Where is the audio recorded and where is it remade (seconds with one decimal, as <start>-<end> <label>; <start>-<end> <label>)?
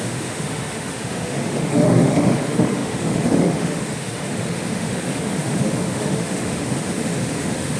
0.0-7.8 remade